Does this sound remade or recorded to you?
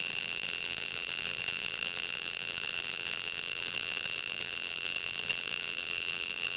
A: remade